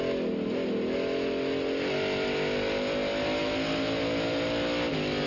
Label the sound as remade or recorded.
recorded